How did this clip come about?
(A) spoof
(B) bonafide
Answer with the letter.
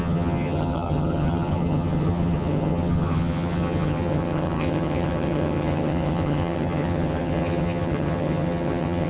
A